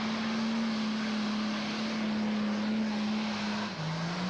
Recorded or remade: recorded